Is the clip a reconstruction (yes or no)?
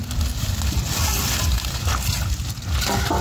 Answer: no